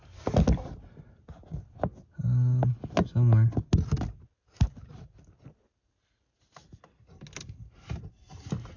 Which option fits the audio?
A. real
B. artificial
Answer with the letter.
A